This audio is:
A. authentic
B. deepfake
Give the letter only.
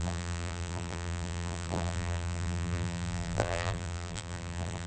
B